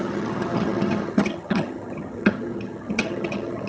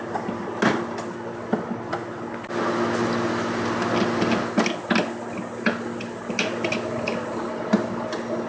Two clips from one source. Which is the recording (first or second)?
second